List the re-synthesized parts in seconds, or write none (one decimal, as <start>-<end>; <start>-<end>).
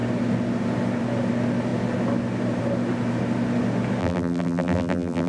4.0-5.3